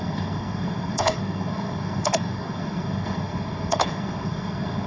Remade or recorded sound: remade